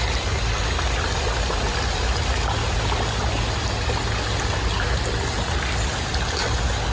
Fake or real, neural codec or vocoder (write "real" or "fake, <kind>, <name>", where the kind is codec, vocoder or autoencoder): real